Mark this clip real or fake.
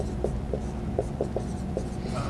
fake